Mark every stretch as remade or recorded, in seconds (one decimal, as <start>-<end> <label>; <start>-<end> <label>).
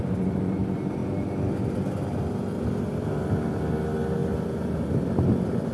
0.0-5.7 recorded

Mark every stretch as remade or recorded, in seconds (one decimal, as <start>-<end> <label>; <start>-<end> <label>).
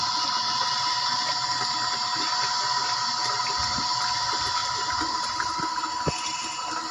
0.0-6.9 recorded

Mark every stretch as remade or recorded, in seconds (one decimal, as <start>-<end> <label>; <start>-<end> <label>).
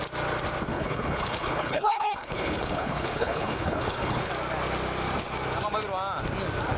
0.0-0.7 recorded; 0.7-4.3 remade; 4.3-6.8 recorded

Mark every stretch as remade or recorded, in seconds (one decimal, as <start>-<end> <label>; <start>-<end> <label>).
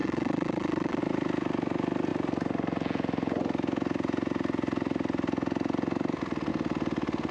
0.0-1.0 remade; 1.0-7.3 recorded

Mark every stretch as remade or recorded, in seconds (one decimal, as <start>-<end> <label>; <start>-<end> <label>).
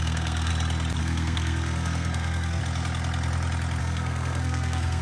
0.0-0.5 remade; 0.5-1.0 recorded; 1.0-2.6 remade; 2.6-3.8 recorded; 3.8-5.0 remade